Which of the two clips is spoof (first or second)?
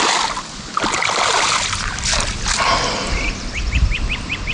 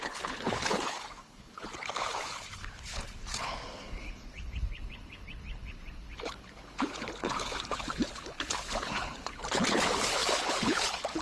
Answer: second